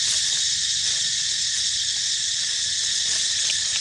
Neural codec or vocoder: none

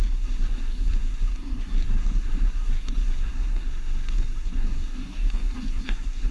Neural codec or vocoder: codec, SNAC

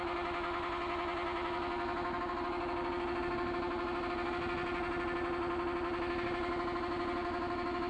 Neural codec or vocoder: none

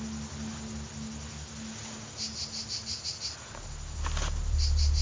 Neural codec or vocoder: none